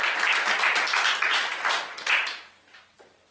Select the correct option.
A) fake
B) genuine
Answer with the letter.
B